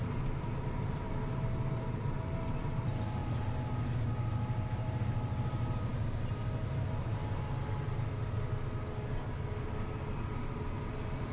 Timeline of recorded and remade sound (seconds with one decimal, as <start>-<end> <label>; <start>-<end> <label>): 0.0-11.3 recorded